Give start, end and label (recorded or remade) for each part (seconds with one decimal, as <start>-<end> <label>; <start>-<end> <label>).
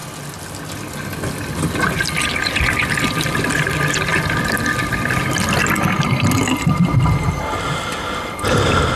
0.0-9.0 recorded